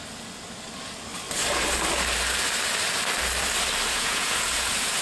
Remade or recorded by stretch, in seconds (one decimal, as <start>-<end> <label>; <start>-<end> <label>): 0.0-3.9 recorded; 3.9-5.0 remade